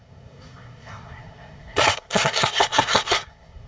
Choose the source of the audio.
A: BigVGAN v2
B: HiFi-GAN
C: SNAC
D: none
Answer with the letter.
C